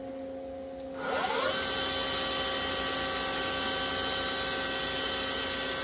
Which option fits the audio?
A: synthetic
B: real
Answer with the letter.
B